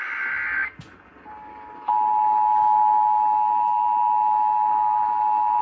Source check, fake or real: real